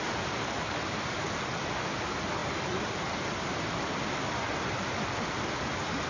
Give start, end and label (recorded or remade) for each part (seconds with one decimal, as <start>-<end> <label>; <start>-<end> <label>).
0.0-6.1 recorded